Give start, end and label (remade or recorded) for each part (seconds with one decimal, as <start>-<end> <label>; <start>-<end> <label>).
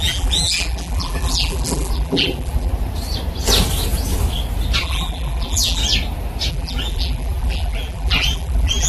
0.0-2.7 remade; 2.7-4.8 recorded; 4.8-5.8 remade; 5.8-6.5 recorded; 6.5-8.9 remade